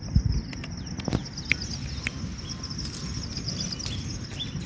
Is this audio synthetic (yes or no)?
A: no